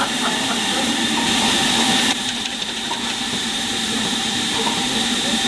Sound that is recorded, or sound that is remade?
remade